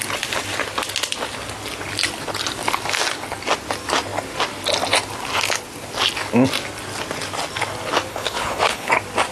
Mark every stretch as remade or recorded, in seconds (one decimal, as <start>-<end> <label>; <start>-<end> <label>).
0.0-8.1 recorded; 8.1-8.9 remade; 8.9-9.3 recorded